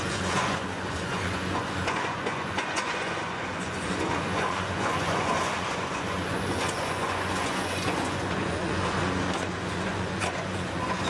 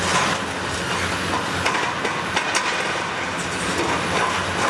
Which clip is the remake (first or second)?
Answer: first